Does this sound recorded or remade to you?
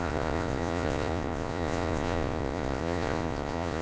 remade